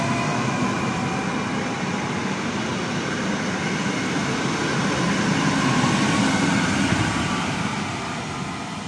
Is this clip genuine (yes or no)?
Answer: yes